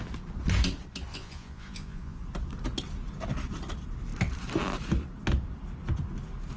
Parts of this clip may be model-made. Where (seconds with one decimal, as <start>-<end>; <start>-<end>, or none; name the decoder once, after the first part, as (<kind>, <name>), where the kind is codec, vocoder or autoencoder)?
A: 1.1-2.2 (vocoder, Vocos)